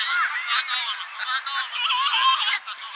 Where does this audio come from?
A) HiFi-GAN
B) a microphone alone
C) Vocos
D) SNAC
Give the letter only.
B